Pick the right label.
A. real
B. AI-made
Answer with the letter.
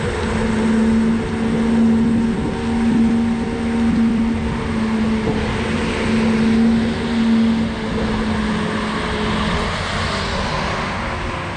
A